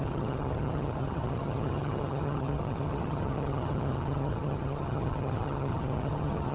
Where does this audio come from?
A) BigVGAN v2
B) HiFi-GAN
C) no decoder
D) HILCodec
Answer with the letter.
B